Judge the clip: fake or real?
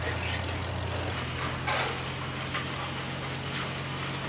real